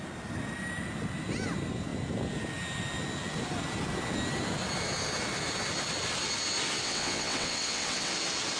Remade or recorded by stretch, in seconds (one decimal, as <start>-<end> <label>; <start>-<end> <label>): 0.0-6.8 recorded; 6.8-8.1 remade; 8.1-8.6 recorded